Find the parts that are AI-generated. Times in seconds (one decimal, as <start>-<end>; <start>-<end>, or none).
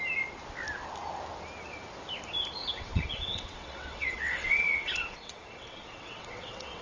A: 2.6-6.8